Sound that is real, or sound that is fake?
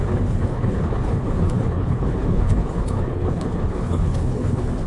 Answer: fake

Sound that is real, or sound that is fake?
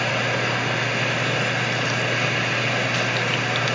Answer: real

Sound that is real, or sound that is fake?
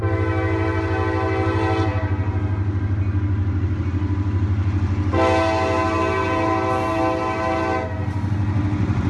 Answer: real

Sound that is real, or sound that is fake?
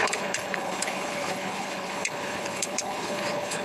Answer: fake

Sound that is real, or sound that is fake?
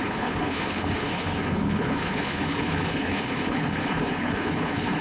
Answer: fake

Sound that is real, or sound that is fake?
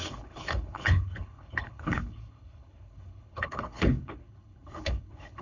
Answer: fake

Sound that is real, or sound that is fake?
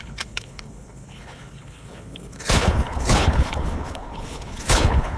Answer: fake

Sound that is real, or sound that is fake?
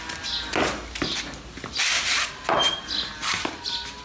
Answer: real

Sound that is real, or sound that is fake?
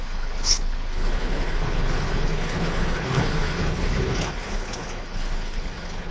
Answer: fake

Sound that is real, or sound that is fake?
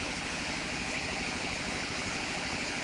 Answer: fake